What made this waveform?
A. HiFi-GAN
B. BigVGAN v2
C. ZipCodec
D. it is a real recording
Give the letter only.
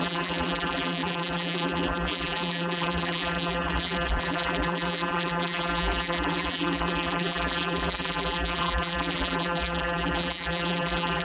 B